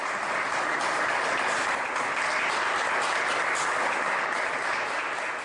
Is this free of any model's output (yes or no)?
yes